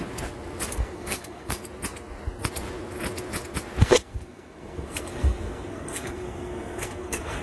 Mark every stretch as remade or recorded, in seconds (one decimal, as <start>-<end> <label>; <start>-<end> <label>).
0.0-0.7 recorded; 0.7-1.6 remade; 1.6-3.8 recorded; 3.8-7.4 remade